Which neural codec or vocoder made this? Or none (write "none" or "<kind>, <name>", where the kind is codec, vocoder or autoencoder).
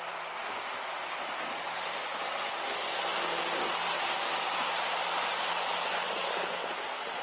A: none